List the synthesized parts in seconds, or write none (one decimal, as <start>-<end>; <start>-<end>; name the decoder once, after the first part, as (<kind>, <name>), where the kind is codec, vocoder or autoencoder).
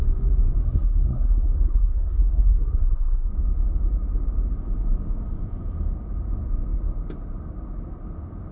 0.6-3.3 (codec, SNAC)